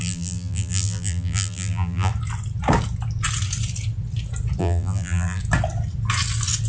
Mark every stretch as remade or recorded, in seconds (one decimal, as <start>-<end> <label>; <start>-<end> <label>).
0.0-2.1 remade; 2.1-4.6 recorded; 4.6-5.4 remade; 5.4-6.7 recorded